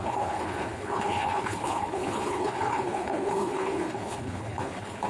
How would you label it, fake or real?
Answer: fake